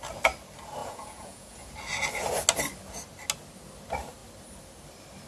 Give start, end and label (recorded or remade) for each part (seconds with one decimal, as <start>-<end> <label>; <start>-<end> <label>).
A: 0.0-0.8 recorded; 0.8-1.7 remade; 1.7-5.3 recorded